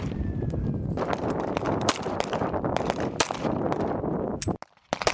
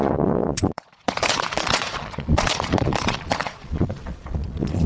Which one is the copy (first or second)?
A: second